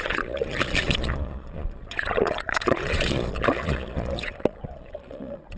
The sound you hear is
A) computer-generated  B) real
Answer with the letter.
A